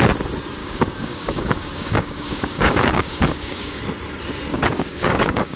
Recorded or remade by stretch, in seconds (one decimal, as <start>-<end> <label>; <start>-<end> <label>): 0.0-0.6 recorded; 0.6-3.8 remade; 3.8-4.5 recorded; 4.5-5.6 remade